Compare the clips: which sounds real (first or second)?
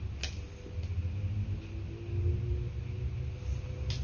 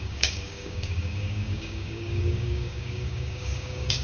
first